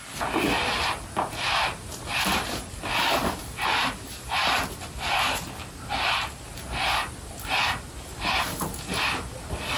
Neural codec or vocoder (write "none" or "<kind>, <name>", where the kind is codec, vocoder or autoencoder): none